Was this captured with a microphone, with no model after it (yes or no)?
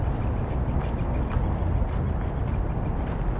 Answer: yes